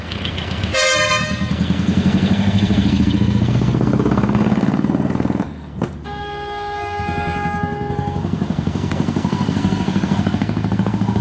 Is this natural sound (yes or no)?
no